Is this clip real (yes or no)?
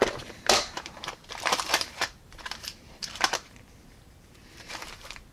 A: no